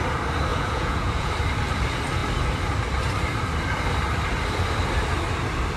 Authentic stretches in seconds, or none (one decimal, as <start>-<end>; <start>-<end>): 0.0-0.5; 1.3-5.8